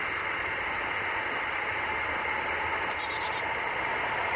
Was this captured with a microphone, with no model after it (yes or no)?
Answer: yes